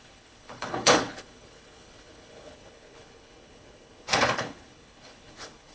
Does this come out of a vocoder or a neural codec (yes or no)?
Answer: yes